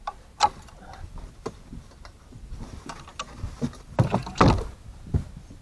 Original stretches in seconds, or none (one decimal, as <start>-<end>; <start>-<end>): 0.0-5.6